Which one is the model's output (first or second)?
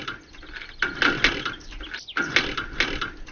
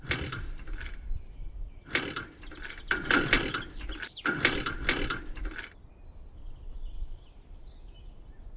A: second